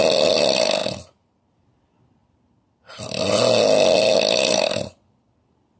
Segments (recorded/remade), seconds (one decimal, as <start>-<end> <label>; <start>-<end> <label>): 0.0-5.8 recorded